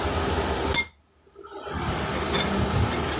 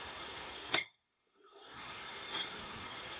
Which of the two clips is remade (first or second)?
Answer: second